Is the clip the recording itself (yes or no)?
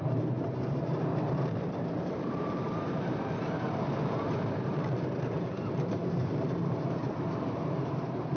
no